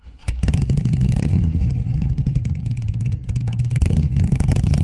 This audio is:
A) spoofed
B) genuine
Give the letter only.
A